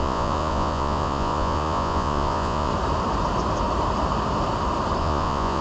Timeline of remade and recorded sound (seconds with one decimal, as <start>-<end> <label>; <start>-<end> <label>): 0.0-2.7 remade; 2.7-5.0 recorded; 5.0-5.6 remade